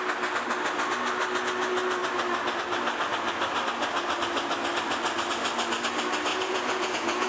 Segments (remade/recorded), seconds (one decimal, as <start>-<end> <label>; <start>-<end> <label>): 0.0-6.3 recorded; 6.3-7.3 remade